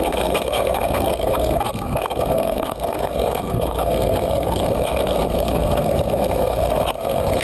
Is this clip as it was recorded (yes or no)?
no